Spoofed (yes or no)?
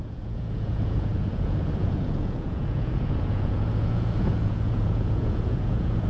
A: yes